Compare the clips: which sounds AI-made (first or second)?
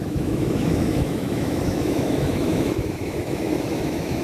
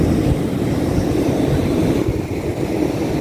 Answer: first